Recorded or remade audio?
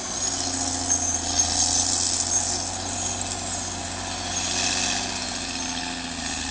recorded